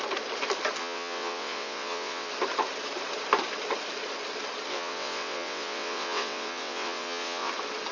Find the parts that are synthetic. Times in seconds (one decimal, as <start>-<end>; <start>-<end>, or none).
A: 0.8-2.3; 4.7-7.5